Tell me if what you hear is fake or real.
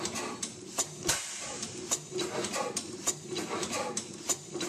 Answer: fake